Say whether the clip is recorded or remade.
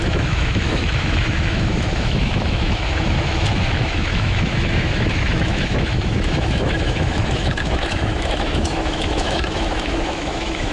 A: remade